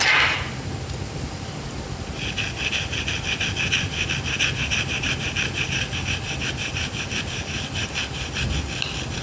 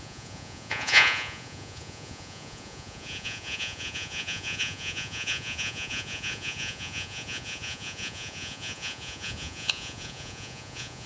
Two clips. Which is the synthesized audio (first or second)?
second